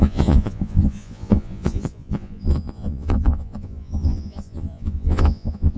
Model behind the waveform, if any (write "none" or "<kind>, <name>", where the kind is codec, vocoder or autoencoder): vocoder, Vocos